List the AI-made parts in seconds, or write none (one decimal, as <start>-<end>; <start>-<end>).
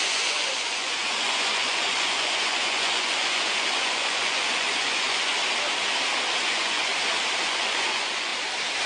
0.0-5.3; 6.4-6.9; 7.4-8.3